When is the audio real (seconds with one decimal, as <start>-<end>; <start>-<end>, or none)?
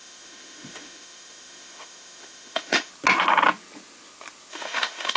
2.9-4.5